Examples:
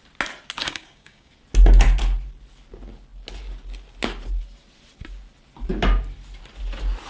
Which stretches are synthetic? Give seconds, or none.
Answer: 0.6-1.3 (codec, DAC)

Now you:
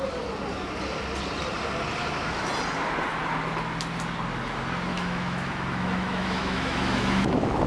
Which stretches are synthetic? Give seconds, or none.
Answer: 2.0-2.5 (autoencoder, DAC-VAE); 4.9-7.7

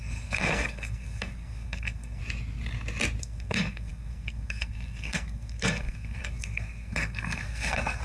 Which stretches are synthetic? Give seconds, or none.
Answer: 0.0-2.2 (codec, SNAC); 3.2-8.0

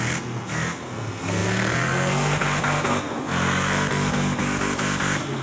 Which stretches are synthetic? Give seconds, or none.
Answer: 0.0-5.4 (codec, SNAC)